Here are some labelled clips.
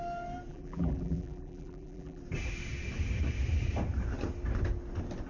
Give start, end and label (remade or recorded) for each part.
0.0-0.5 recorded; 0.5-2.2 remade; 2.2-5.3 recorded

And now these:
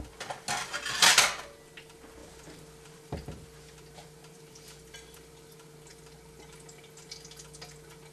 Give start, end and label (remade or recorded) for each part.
0.0-0.6 recorded; 0.6-1.1 remade; 1.1-2.2 recorded; 2.2-5.5 remade; 5.5-8.1 recorded